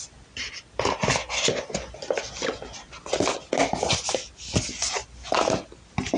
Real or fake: real